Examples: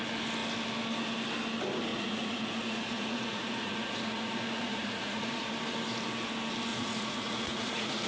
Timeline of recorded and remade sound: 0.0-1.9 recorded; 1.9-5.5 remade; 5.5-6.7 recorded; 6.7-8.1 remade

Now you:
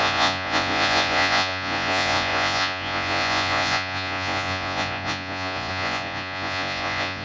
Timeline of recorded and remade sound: 0.0-7.2 remade

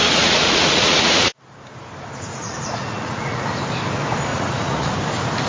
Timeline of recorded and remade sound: 0.0-1.4 remade; 1.4-2.3 recorded; 2.3-3.5 remade; 3.5-4.3 recorded; 4.3-4.9 remade; 4.9-5.5 recorded

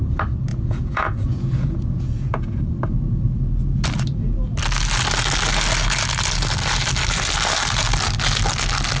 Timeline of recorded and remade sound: 0.0-0.5 recorded; 0.5-2.6 remade; 2.6-9.0 recorded